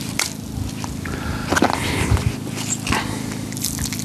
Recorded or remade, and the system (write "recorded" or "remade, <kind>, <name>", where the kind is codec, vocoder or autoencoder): recorded